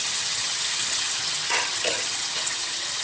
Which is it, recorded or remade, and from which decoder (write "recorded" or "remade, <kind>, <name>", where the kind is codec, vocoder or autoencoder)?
remade, vocoder, HiFi-GAN